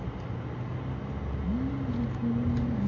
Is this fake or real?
real